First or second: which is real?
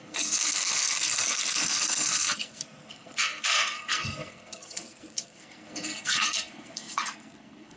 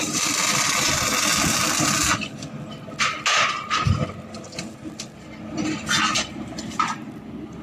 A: second